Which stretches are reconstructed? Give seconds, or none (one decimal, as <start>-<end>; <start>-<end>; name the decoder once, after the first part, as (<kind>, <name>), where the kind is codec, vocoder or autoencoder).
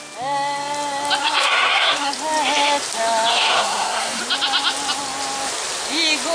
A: 1.2-2.1 (codec, SNAC); 3.3-4.2